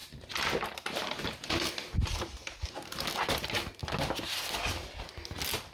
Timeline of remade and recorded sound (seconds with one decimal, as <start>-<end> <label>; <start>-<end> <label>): 0.0-3.1 remade; 3.1-5.7 recorded